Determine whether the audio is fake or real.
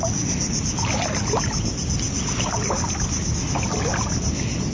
real